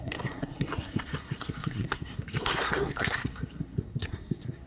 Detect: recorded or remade remade